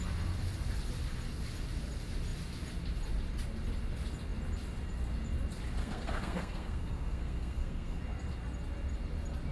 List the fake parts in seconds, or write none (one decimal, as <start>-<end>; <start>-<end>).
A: 5.8-8.0